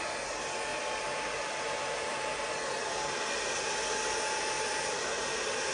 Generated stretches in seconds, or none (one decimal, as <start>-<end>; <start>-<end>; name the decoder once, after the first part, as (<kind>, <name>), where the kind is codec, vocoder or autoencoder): none